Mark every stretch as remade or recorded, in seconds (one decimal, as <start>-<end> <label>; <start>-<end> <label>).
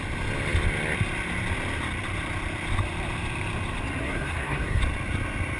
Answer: 0.0-4.0 recorded; 4.0-4.8 remade; 4.8-5.6 recorded